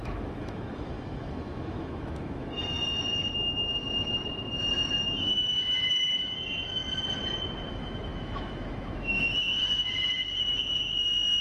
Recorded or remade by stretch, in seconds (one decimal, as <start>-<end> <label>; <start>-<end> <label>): 0.0-6.8 remade; 6.8-7.7 recorded; 7.7-11.4 remade